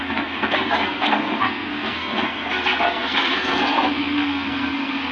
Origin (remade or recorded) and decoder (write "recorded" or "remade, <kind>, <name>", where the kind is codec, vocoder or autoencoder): remade, codec, SNAC